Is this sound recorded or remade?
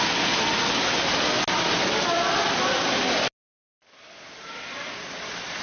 recorded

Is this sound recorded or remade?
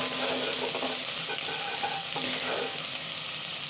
recorded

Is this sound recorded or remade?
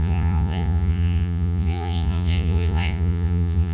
remade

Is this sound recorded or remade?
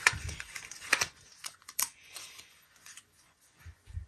remade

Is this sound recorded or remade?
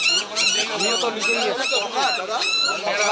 remade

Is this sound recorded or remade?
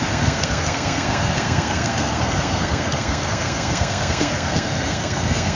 remade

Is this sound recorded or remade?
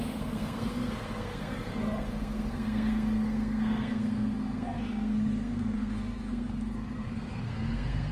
remade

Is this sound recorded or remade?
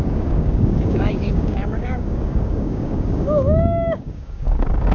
remade